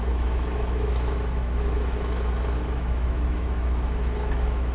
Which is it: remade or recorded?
remade